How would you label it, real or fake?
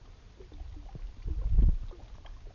real